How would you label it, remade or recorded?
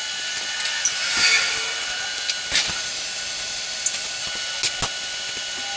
recorded